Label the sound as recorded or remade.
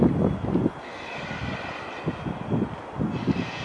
recorded